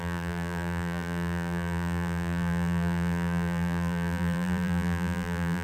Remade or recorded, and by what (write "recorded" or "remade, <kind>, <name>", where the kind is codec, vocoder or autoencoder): remade, vocoder, BigVGAN v2